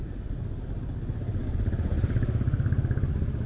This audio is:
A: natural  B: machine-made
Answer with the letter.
A